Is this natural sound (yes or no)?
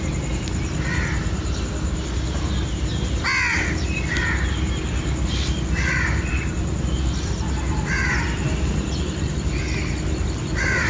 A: yes